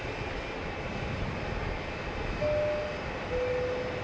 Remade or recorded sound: recorded